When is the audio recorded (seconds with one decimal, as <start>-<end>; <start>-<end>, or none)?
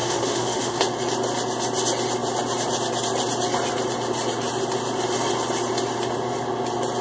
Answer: 0.8-7.0